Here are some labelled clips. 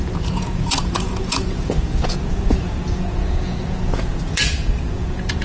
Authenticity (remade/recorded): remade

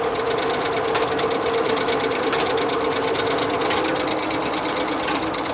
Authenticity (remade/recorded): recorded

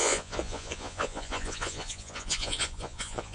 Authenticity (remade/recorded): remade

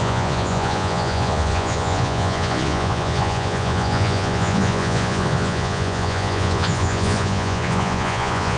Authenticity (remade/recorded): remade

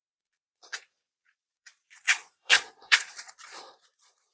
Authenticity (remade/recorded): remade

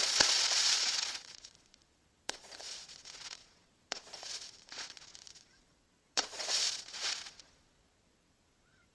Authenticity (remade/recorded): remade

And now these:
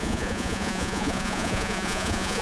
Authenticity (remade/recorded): remade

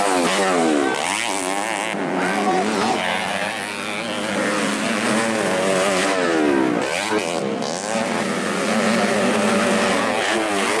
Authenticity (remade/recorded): recorded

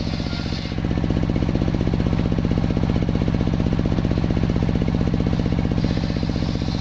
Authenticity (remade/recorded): recorded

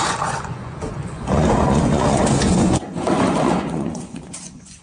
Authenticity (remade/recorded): remade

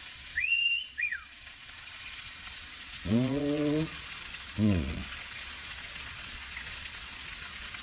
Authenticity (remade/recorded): remade